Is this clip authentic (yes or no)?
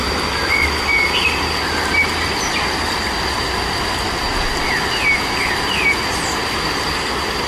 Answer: yes